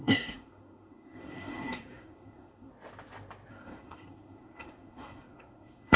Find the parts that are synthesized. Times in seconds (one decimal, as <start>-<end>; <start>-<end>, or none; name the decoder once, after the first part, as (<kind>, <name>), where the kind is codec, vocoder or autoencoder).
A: 0.0-2.7 (codec, SNAC); 3.5-6.0